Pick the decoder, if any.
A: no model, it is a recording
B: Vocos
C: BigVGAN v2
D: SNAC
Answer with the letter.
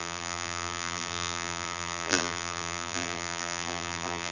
C